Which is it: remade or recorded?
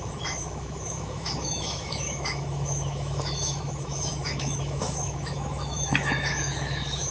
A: remade